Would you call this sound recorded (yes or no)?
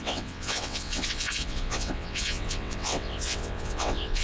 no